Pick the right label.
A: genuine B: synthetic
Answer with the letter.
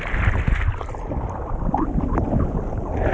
A